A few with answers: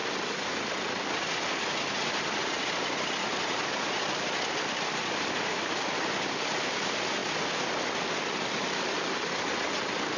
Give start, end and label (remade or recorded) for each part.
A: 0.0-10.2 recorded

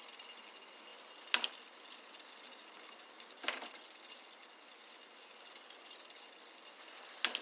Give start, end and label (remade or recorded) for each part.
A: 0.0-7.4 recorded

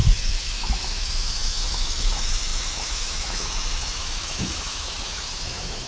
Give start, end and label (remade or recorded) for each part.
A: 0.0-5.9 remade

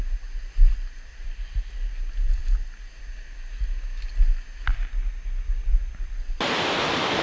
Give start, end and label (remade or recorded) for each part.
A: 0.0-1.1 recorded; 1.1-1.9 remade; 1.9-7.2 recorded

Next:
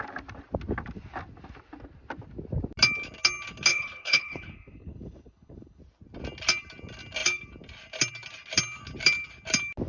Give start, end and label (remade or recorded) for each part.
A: 0.0-3.7 recorded; 3.7-5.8 remade; 5.8-9.9 recorded